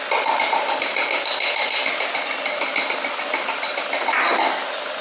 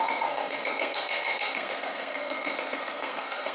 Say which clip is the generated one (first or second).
second